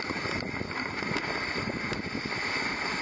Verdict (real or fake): real